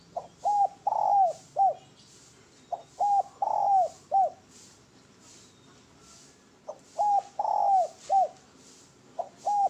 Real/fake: real